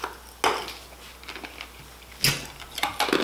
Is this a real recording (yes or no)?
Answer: yes